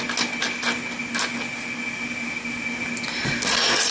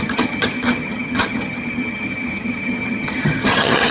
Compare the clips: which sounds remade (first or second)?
second